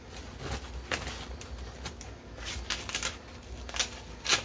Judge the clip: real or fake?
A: real